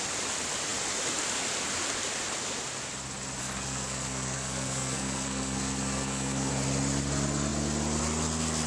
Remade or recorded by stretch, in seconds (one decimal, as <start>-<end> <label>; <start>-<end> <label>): 0.0-3.4 recorded; 3.4-6.5 remade; 6.5-8.7 recorded